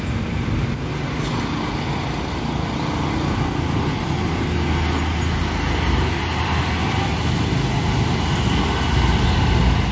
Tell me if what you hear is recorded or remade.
recorded